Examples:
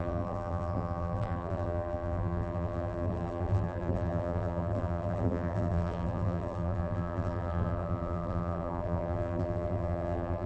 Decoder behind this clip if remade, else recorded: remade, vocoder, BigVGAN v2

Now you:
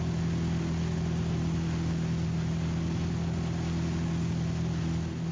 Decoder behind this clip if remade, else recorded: recorded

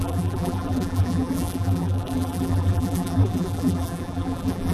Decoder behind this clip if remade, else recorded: remade, vocoder, BigVGAN v2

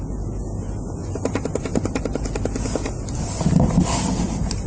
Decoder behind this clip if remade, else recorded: recorded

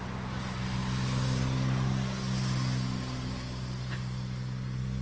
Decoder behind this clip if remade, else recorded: recorded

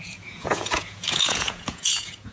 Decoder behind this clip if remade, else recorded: remade, vocoder, Vocos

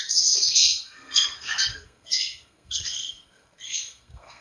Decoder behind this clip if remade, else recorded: remade, codec, SNAC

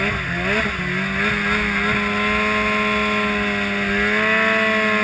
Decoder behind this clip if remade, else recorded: recorded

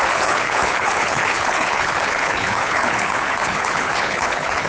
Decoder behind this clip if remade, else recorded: remade, codec, HILCodec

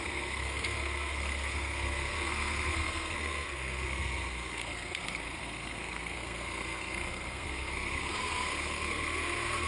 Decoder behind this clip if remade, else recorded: remade, codec, SNAC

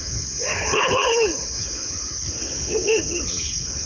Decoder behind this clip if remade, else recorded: remade, codec, HILCodec